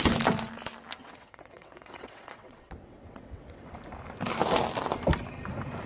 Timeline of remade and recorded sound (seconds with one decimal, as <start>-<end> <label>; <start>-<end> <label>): 0.0-1.0 recorded; 1.0-3.7 remade; 3.7-5.9 recorded